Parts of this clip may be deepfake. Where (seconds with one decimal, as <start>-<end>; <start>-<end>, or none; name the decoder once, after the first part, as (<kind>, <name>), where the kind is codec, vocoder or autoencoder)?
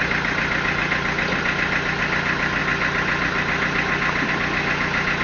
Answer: none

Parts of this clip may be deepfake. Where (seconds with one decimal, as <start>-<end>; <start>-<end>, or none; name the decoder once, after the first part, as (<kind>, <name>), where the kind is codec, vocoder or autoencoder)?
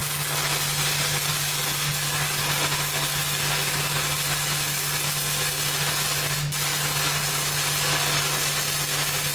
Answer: none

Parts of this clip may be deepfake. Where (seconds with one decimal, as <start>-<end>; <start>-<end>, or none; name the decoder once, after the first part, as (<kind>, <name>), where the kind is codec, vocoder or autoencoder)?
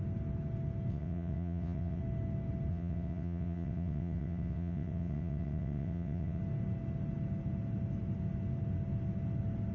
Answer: 0.9-2.0 (vocoder, WaveNeXt); 2.7-6.4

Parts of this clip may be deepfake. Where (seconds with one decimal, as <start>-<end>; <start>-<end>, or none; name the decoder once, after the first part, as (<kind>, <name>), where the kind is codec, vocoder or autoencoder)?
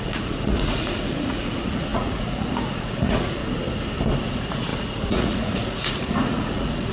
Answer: 0.0-3.4 (vocoder, Vocos); 4.2-6.9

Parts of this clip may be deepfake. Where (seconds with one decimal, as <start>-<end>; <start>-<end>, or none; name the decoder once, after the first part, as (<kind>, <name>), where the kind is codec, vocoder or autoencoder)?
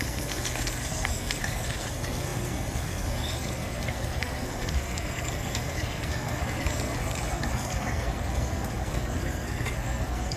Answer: 0.0-10.4 (codec, SNAC)